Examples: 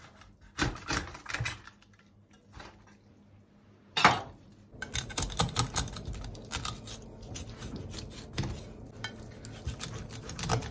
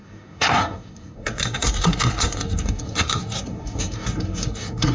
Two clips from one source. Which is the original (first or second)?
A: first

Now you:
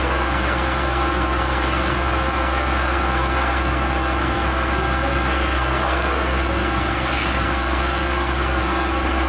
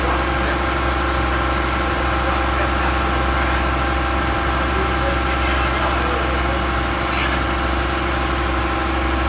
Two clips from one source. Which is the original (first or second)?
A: second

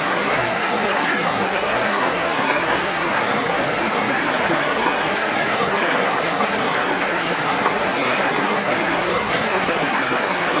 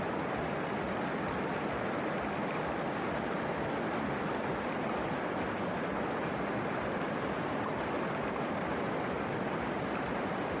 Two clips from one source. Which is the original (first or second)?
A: second